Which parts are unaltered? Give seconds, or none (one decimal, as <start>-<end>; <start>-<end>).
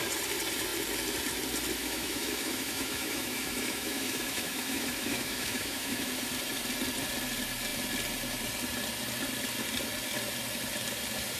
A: 0.0-1.8; 6.1-11.4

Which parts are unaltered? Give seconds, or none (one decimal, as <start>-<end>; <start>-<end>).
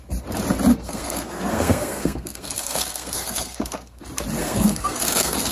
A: 0.0-0.7; 4.0-4.4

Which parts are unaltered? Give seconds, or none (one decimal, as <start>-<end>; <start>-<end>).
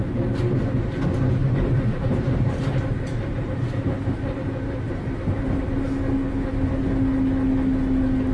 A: 0.0-1.4; 5.9-8.3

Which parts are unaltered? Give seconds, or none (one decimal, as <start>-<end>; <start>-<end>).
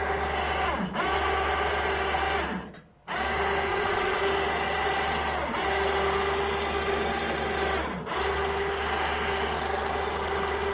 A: 0.0-3.7; 4.2-10.7